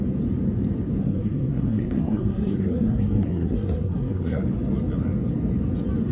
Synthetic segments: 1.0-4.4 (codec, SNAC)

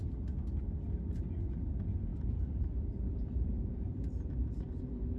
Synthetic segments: 2.1-5.2 (vocoder, BigVGAN v2)

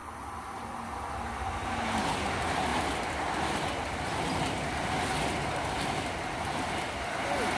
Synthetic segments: none

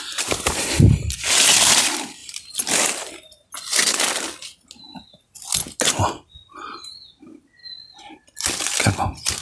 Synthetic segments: none

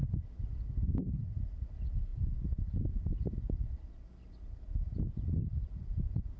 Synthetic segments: none

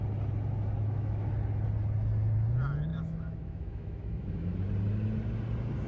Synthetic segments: 0.8-1.3 (autoencoder, DAC-VAE); 2.9-4.6